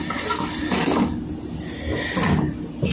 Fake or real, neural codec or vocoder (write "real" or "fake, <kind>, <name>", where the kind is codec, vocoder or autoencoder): real